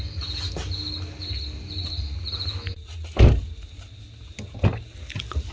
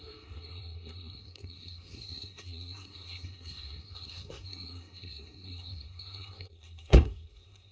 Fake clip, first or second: second